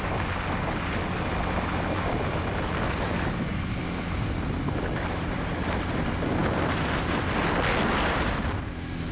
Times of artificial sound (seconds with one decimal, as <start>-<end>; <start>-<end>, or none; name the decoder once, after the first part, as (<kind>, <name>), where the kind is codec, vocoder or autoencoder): none